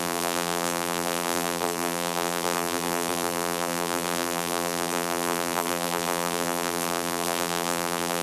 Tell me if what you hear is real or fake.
fake